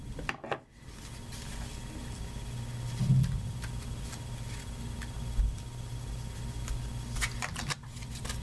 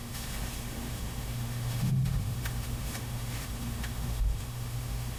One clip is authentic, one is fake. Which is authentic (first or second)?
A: first